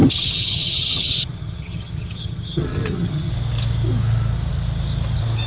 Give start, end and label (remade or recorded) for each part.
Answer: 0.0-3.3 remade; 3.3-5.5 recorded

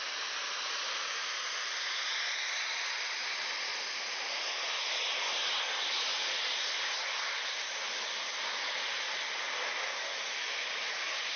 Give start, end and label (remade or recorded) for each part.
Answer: 0.0-6.1 recorded; 6.1-6.7 remade; 6.7-11.4 recorded

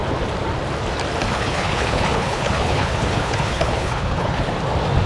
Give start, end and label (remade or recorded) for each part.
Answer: 0.0-1.3 recorded; 1.3-4.4 remade; 4.4-5.1 recorded

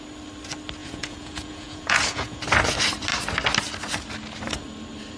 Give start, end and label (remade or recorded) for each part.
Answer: 0.0-0.8 recorded; 0.8-2.4 remade; 2.4-5.2 recorded

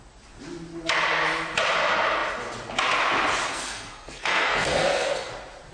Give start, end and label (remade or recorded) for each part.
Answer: 0.0-3.5 recorded; 3.5-5.3 remade; 5.3-5.7 recorded